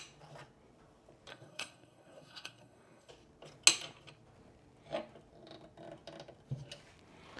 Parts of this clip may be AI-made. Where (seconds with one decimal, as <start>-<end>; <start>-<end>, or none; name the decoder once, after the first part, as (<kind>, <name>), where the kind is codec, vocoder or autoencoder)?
1.3-3.1 (codec, SNAC)